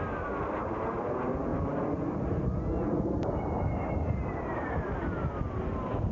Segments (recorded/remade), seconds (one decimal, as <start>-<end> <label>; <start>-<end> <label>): 0.0-6.1 recorded